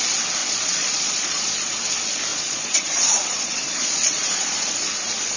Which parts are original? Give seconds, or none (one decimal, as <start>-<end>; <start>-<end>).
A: 0.0-0.4; 1.5-2.3; 4.9-5.4